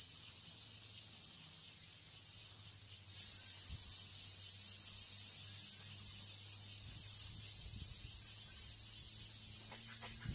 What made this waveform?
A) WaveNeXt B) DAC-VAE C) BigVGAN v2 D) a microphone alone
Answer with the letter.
D